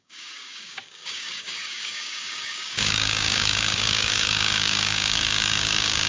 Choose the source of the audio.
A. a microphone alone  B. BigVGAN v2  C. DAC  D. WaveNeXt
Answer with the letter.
C